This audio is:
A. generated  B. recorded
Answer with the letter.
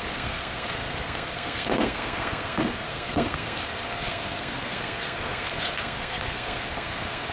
A